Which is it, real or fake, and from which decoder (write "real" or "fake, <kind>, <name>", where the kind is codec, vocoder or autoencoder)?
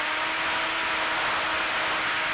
real